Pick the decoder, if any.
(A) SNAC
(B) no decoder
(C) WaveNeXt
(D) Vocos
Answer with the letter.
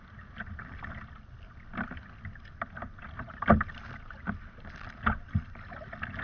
B